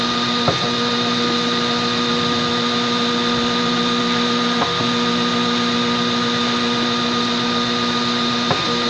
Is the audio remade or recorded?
recorded